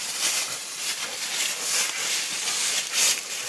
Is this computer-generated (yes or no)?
no